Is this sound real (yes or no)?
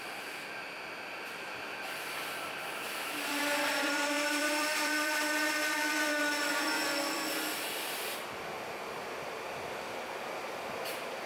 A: no